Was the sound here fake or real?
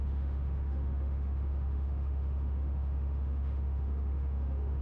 fake